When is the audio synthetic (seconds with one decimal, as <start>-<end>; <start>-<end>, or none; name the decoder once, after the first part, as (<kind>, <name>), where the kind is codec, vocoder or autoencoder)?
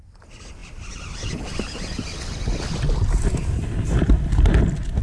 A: none